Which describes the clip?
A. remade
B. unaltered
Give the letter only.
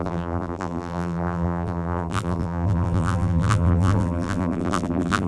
A